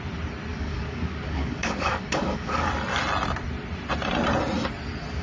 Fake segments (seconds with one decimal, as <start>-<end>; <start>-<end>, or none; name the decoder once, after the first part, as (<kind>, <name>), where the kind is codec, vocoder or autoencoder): 0.5-2.7 (codec, DAC)